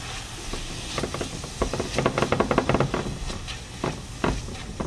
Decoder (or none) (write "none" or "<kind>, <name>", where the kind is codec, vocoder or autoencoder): none